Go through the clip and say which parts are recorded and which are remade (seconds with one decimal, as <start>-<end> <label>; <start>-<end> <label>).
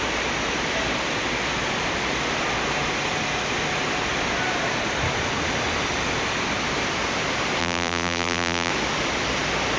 0.0-7.6 recorded; 7.6-8.7 remade; 8.7-9.8 recorded